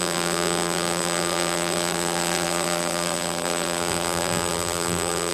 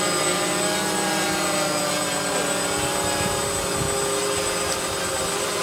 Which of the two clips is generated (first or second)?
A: first